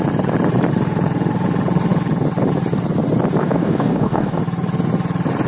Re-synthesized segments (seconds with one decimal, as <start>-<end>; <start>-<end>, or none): 3.4-4.4